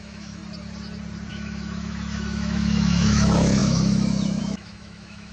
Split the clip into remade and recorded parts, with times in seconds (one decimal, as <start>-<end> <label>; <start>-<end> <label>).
0.0-0.4 remade; 0.4-1.3 recorded; 1.3-5.3 remade